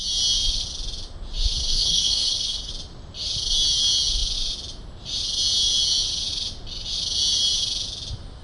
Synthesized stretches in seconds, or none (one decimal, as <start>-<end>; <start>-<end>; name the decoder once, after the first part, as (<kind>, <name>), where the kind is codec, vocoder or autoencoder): 1.6-2.7 (codec, SNAC)